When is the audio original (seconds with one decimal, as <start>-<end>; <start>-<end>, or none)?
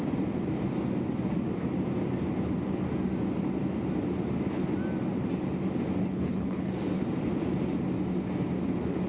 0.0-6.0; 6.7-9.1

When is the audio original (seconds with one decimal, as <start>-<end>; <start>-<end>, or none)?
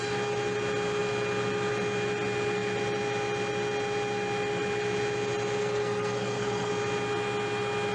0.0-5.6; 6.7-7.9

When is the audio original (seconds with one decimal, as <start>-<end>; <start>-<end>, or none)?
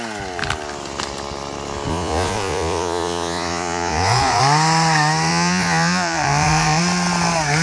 0.0-1.9; 4.4-5.3; 6.8-7.6